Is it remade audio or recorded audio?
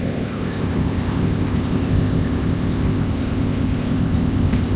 remade